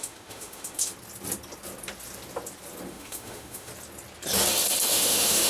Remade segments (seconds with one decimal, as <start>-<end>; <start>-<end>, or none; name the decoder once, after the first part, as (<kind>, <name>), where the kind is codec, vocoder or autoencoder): 0.0-0.9 (autoencoder, DAC-VAE); 2.9-3.7; 4.9-5.5